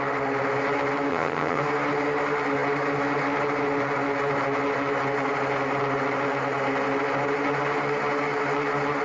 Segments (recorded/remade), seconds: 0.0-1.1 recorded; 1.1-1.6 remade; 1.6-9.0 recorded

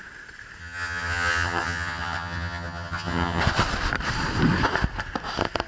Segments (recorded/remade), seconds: 0.0-0.6 recorded; 0.6-3.4 remade; 3.4-5.7 recorded

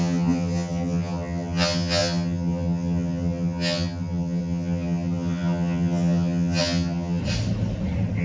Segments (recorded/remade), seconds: 0.0-7.2 remade; 7.2-8.2 recorded

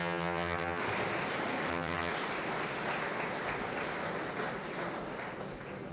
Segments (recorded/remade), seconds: 0.0-0.8 remade; 0.8-1.7 recorded; 1.7-2.1 remade; 2.1-5.9 recorded

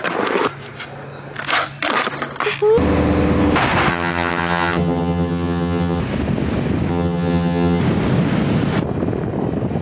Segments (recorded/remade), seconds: 0.0-3.9 recorded; 3.9-6.0 remade; 6.0-6.9 recorded; 6.9-7.8 remade; 7.8-9.8 recorded

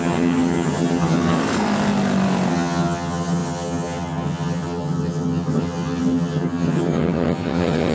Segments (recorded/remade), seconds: 0.0-1.4 remade; 1.4-2.5 recorded; 2.5-7.9 remade